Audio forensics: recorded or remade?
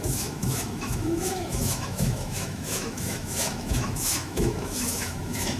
remade